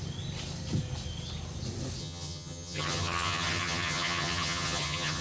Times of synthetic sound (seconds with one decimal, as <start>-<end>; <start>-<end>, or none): 2.0-5.2